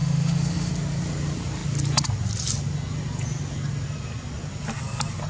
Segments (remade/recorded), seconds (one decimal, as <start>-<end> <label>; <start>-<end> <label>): 0.0-0.7 remade; 0.7-5.3 recorded